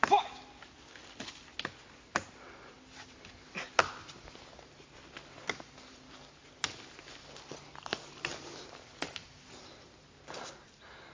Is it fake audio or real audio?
real